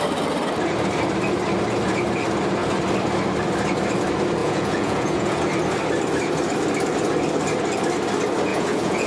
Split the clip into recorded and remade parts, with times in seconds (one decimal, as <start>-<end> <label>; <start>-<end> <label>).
0.0-4.4 recorded; 4.4-5.4 remade; 5.4-8.5 recorded; 8.5-9.1 remade